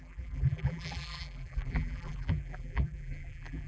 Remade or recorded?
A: remade